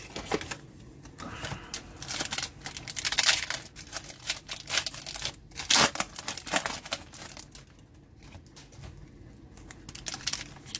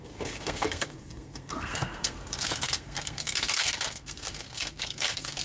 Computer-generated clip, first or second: second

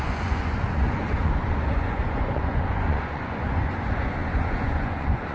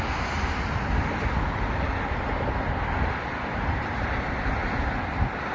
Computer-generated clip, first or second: first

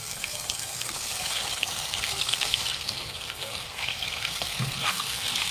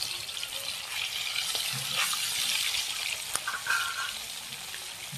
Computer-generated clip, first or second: first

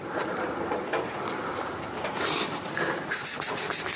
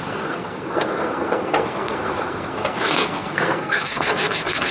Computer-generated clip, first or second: second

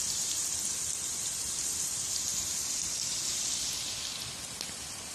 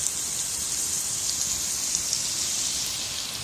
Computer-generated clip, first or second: first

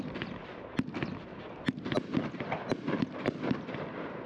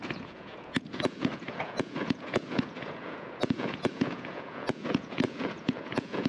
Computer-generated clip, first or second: second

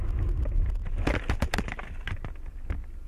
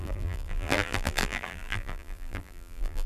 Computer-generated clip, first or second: second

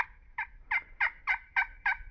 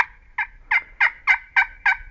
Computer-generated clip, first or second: first